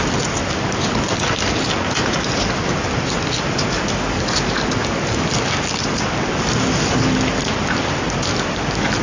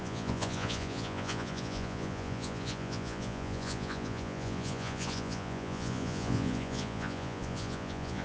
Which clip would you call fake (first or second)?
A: second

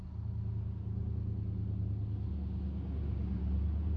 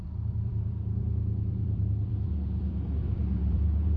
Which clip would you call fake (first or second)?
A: second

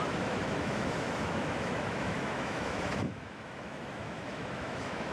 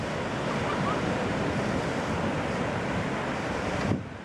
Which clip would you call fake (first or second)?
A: first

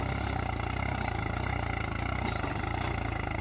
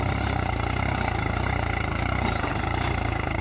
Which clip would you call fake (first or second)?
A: second